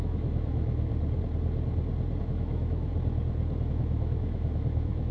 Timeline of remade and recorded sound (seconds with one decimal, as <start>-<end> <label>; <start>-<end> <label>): 0.0-0.9 remade; 0.9-2.2 recorded; 2.2-2.9 remade; 2.9-3.7 recorded; 3.7-5.1 remade